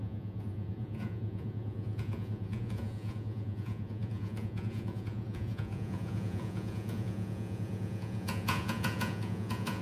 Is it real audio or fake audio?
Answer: fake